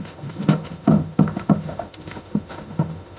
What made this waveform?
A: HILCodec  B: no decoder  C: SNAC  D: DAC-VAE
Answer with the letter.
D